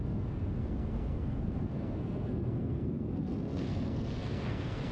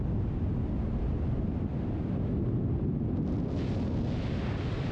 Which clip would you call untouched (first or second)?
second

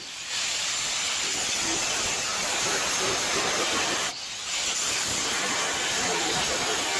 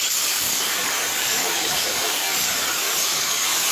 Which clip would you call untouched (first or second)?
first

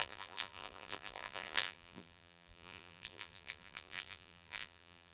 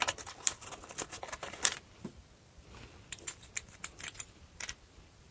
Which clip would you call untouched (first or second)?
second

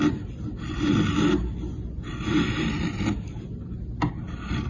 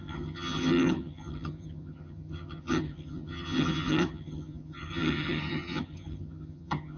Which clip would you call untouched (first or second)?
first